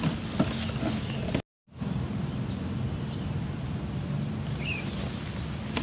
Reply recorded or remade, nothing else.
recorded